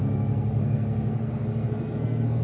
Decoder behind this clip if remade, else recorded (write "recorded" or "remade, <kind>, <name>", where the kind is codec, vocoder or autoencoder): remade, codec, SNAC